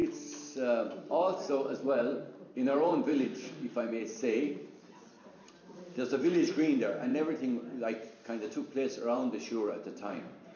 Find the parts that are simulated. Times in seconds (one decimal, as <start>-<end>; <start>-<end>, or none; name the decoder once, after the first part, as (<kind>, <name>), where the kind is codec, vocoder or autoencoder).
0.8-7.1 (vocoder, BigVGAN v2); 9.0-10.6